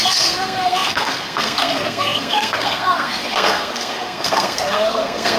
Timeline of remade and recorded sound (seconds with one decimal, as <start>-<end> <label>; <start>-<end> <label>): 0.0-5.4 remade